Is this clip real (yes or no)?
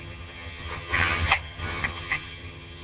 no